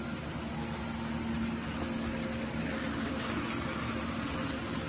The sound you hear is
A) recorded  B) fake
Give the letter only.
A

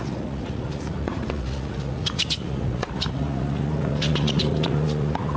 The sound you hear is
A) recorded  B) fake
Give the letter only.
B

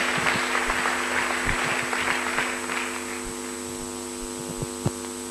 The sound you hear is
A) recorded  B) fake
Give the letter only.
A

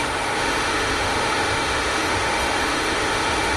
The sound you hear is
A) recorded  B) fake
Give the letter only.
B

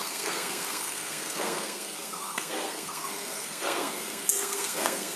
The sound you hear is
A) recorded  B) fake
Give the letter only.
B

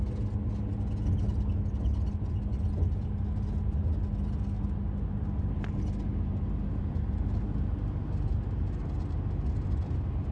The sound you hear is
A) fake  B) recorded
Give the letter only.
B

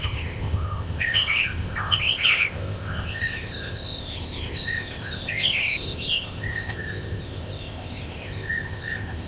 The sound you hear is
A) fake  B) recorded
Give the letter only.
A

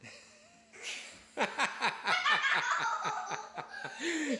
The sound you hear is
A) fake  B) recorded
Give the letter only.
B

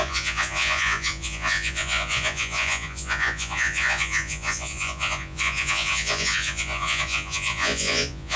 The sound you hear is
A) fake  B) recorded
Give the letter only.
A